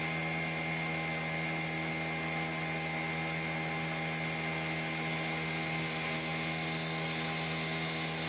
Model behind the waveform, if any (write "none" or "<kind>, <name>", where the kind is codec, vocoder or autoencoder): none